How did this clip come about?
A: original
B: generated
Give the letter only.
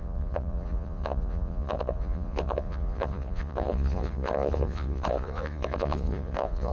B